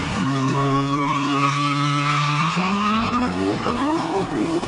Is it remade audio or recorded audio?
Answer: remade